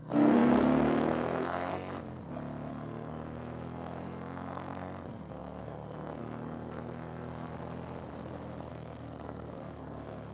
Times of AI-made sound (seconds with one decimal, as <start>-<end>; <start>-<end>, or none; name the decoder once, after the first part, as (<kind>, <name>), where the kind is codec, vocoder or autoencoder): 0.0-2.1 (codec, SNAC); 2.7-7.5; 8.6-10.3